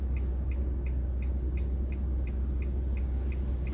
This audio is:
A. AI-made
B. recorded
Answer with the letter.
B